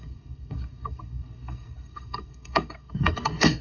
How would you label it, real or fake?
fake